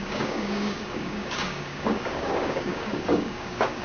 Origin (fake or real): fake